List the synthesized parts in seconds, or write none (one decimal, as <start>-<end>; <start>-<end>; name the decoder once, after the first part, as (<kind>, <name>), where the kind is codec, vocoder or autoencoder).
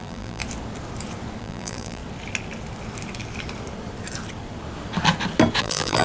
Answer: 0.0-0.4 (vocoder, BigVGAN v2); 1.4-2.0; 5.6-6.0